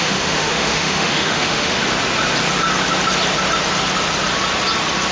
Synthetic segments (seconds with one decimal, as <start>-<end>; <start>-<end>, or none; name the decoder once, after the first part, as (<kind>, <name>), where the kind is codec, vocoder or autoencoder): 0.0-1.8 (autoencoder, DAC-VAE)